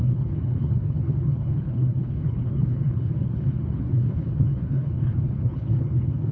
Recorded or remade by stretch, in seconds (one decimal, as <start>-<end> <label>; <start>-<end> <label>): 0.0-6.3 remade